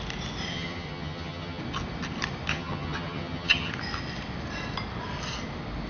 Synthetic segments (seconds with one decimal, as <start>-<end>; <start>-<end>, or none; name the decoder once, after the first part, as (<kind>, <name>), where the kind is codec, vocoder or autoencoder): 0.5-1.6 (vocoder, HiFi-GAN); 2.5-3.7